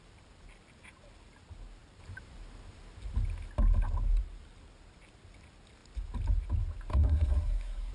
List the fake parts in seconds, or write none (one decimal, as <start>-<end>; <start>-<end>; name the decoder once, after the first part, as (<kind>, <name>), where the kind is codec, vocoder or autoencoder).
6.9-7.9 (codec, SNAC)